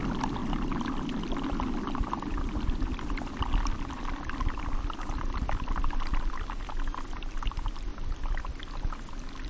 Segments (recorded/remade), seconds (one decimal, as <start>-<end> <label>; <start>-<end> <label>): 0.0-0.4 recorded; 0.4-1.2 remade; 1.2-9.5 recorded